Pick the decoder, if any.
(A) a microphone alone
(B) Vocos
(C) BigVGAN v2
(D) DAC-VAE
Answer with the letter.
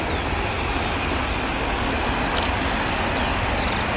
A